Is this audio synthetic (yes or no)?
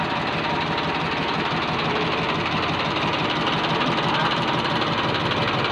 no